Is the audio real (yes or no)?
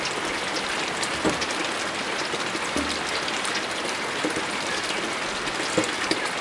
yes